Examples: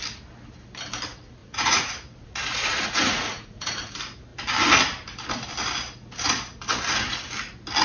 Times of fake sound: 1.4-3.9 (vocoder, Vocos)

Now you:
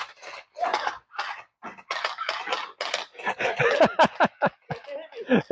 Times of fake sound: none

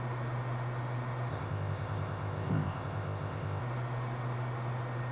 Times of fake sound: 1.3-3.6 (codec, ZipCodec)

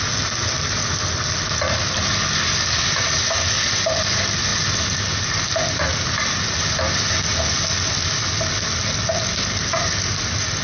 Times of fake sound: none

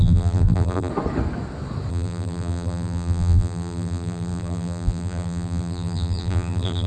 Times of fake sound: 0.0-0.9 (vocoder, BigVGAN v2); 1.9-6.9